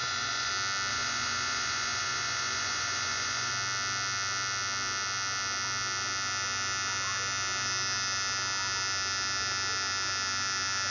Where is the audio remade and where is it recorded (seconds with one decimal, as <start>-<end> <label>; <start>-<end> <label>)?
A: 0.0-0.5 remade; 0.5-0.9 recorded; 0.9-3.5 remade; 3.5-10.9 recorded